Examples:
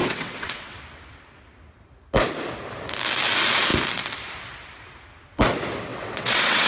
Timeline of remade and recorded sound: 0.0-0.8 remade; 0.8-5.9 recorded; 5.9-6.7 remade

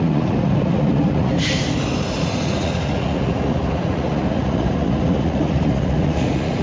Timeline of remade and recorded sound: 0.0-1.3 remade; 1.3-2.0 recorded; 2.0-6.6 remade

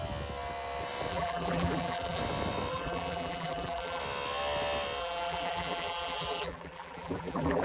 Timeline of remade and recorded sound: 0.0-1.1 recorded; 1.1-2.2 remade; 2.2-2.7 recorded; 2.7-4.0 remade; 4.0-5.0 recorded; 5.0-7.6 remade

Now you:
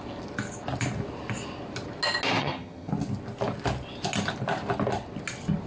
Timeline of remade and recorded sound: 0.0-2.4 recorded; 2.4-2.9 remade; 2.9-5.7 recorded

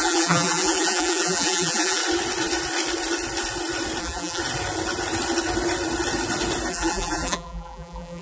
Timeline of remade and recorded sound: 0.0-2.0 remade; 2.0-4.0 recorded; 4.0-4.4 remade; 4.4-6.7 recorded; 6.7-8.2 remade

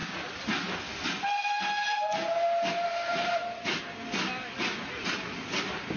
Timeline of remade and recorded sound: 0.0-2.9 recorded; 2.9-3.8 remade; 3.8-6.0 recorded

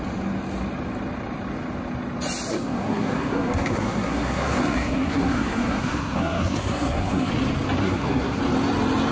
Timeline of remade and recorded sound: 0.0-2.5 recorded; 2.5-7.3 remade; 7.3-7.8 recorded; 7.8-8.4 remade; 8.4-9.1 recorded

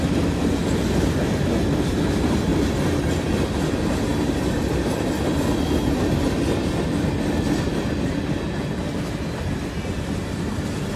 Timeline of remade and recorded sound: 0.0-11.0 recorded